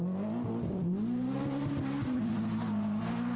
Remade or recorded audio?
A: recorded